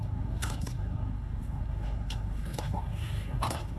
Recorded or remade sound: remade